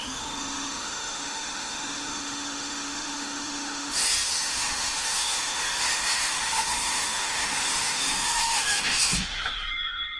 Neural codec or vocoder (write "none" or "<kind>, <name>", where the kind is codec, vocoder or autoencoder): autoencoder, DAC-VAE